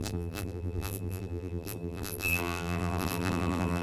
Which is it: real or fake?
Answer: fake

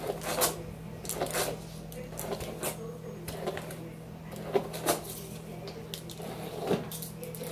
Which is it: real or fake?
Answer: real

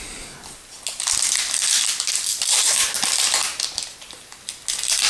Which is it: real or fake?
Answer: real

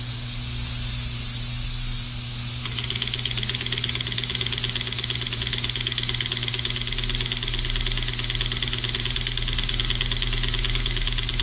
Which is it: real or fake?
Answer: real